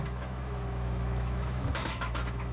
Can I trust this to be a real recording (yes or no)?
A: no